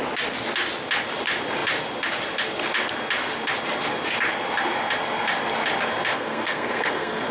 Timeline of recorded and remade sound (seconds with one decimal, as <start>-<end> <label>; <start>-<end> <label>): 0.0-6.1 recorded; 6.1-7.3 remade